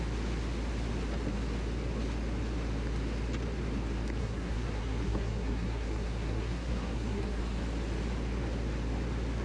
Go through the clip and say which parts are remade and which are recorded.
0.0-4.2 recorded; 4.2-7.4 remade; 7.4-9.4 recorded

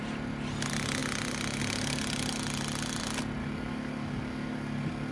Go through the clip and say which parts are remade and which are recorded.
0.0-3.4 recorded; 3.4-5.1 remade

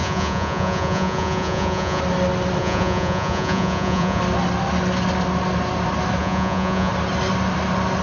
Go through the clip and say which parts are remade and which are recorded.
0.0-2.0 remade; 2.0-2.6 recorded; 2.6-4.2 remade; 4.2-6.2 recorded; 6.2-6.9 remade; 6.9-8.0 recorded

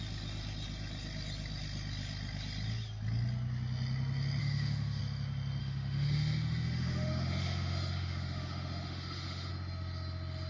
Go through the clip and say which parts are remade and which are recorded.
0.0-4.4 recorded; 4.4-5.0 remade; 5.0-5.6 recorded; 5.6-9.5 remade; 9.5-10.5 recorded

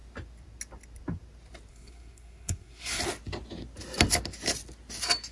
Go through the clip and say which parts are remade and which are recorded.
0.0-1.7 recorded; 1.7-3.0 remade; 3.0-5.3 recorded

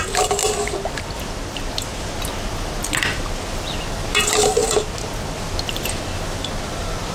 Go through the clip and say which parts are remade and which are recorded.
0.0-7.1 recorded